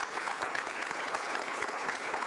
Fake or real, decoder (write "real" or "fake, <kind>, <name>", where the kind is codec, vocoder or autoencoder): fake, codec, HILCodec